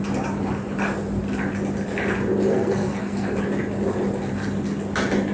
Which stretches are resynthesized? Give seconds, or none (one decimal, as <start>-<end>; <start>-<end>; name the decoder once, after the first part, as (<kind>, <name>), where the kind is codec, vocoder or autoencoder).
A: 2.5-3.4 (codec, SNAC)